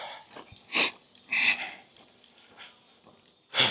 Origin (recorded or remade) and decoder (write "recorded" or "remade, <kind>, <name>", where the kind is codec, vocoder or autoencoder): recorded